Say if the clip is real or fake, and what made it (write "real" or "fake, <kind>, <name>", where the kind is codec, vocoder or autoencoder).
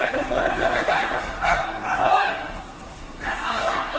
fake, codec, SNAC